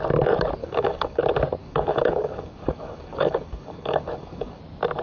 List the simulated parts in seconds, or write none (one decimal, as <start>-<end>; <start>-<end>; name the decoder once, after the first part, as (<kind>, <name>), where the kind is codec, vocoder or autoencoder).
0.6-1.2 (codec, DAC); 1.6-4.6